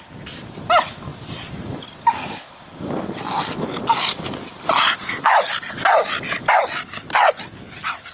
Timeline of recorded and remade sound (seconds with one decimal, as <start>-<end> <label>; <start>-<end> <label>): 0.0-8.1 recorded